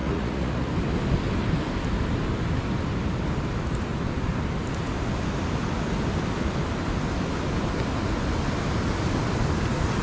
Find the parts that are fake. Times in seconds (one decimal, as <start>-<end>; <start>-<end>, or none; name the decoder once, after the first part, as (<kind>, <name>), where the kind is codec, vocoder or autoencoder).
0.0-0.7 (vocoder, Vocos)